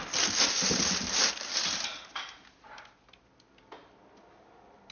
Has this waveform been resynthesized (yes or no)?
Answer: no